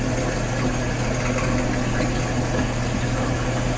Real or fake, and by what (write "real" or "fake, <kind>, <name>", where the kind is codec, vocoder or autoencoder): real